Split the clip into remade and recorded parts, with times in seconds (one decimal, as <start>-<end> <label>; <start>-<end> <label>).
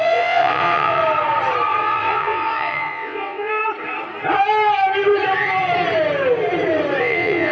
0.0-1.0 remade; 1.0-1.8 recorded; 1.8-3.6 remade; 3.6-7.0 recorded; 7.0-7.5 remade